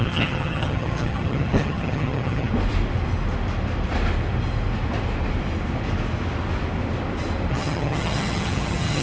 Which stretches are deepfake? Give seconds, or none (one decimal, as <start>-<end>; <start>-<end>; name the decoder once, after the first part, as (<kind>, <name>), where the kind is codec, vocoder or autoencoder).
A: 0.0-2.5 (vocoder, HiFi-GAN); 7.5-9.0